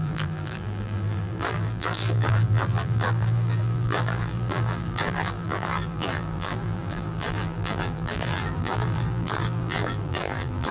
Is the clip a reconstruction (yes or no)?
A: yes